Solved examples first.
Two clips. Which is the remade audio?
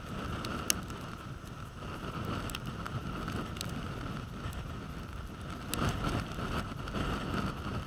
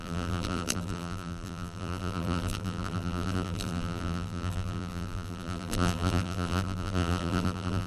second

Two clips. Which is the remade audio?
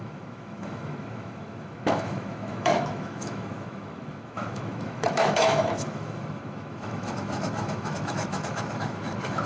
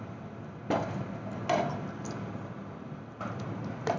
first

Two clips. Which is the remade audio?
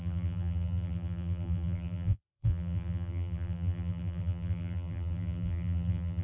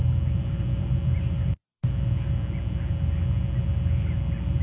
first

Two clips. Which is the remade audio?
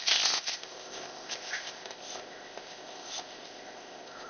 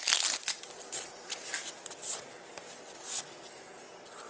first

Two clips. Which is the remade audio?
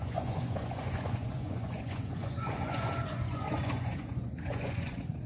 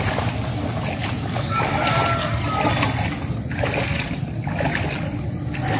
first